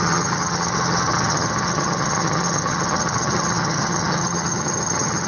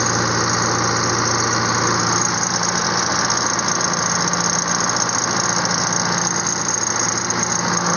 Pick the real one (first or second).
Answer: second